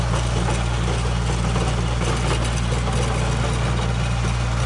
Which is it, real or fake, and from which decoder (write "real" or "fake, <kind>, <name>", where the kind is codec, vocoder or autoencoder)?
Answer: real